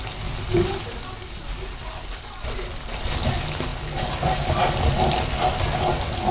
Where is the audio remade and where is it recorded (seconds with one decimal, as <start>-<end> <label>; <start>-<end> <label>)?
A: 0.0-6.3 recorded